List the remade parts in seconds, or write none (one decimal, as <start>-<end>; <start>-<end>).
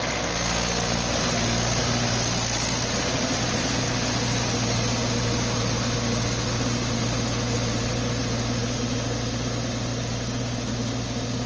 none